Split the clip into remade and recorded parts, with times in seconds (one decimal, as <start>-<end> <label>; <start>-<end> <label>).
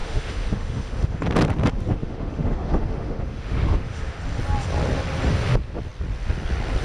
0.0-1.2 remade; 1.2-1.9 recorded; 1.9-4.2 remade; 4.2-6.8 recorded